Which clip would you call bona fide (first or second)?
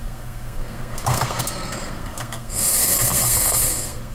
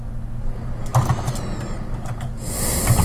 second